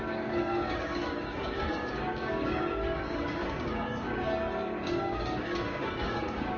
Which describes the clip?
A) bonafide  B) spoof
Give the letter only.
B